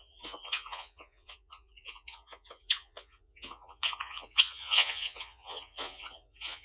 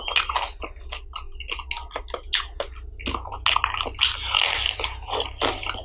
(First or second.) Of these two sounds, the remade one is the first